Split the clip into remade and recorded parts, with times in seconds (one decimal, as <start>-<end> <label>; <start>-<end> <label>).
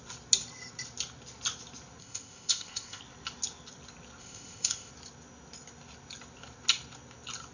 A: 0.0-2.0 recorded; 2.0-3.0 remade; 3.0-4.2 recorded; 4.2-4.9 remade; 4.9-7.5 recorded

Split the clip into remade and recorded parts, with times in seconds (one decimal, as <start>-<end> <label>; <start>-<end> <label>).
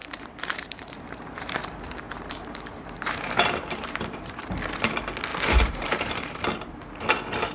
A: 0.0-4.5 remade; 4.5-5.3 recorded; 5.3-6.1 remade; 6.1-7.5 recorded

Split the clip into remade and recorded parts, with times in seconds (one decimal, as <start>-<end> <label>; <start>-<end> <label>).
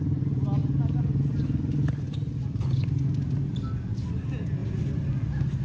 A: 0.0-5.6 recorded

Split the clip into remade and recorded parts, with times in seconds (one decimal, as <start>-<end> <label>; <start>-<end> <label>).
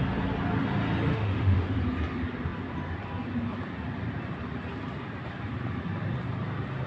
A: 0.0-1.1 recorded; 1.1-1.8 remade; 1.8-6.9 recorded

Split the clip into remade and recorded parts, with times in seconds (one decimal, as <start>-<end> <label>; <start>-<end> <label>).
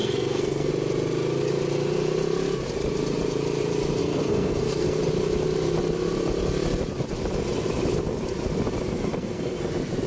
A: 0.0-0.7 remade; 0.7-4.0 recorded; 4.0-5.0 remade; 5.0-9.1 recorded; 9.1-9.7 remade; 9.7-10.1 recorded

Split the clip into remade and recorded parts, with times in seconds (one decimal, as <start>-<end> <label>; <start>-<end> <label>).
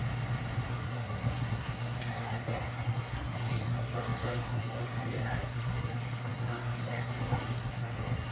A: 0.0-0.7 recorded; 0.7-8.3 remade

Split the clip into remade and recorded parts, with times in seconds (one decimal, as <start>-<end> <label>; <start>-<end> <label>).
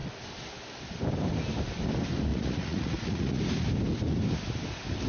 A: 0.0-2.3 recorded; 2.3-3.4 remade; 3.4-5.1 recorded